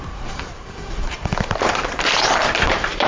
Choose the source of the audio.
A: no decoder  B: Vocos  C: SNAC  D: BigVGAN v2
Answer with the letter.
D